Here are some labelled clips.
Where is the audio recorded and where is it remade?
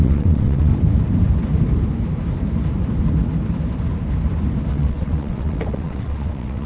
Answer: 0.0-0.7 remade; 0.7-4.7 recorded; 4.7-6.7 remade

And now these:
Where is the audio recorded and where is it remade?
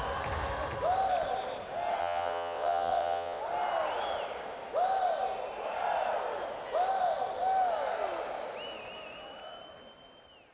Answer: 0.0-2.0 recorded; 2.0-3.4 remade; 3.4-10.5 recorded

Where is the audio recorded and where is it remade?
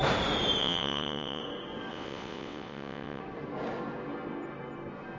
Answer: 0.0-0.6 recorded; 0.6-1.4 remade; 1.4-1.9 recorded; 1.9-3.2 remade; 3.2-5.2 recorded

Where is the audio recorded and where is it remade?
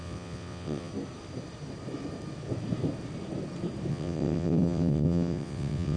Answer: 0.0-0.9 remade; 0.9-3.9 recorded; 3.9-6.0 remade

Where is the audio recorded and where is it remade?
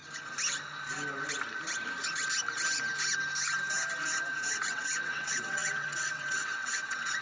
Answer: 0.0-4.3 recorded; 4.3-7.2 remade